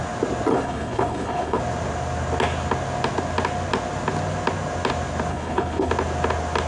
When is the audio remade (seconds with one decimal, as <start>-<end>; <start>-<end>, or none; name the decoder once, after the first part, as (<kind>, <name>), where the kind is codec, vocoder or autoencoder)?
0.5-1.6 (codec, HILCodec); 5.3-5.9